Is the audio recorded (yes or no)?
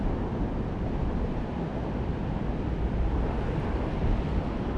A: yes